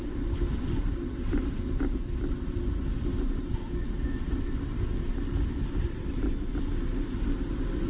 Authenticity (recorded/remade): recorded